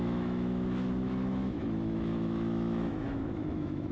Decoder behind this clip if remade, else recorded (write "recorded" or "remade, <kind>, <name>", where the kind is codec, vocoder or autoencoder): remade, autoencoder, DAC-VAE